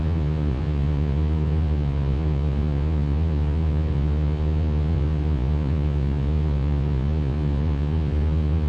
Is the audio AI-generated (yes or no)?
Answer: yes